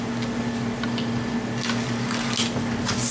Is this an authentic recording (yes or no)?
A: yes